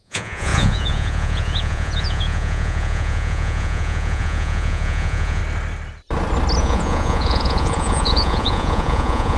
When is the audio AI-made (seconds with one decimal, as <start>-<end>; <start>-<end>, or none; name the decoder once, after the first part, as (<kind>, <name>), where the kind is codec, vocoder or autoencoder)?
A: 0.0-5.4 (vocoder, Vocos); 6.6-9.4